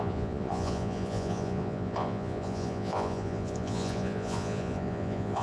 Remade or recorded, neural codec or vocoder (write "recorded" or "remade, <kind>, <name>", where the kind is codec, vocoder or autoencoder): remade, vocoder, Vocos